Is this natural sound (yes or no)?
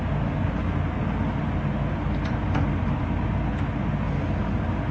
yes